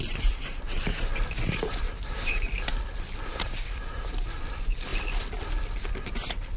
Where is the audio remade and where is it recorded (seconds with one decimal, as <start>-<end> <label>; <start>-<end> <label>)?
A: 0.0-2.8 remade; 2.8-3.3 recorded; 3.3-4.9 remade; 4.9-5.8 recorded; 5.8-6.6 remade